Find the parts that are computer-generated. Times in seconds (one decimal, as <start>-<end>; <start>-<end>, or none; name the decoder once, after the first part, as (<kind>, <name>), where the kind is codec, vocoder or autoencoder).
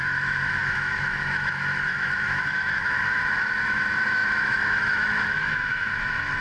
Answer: 0.0-6.4 (autoencoder, DAC-VAE)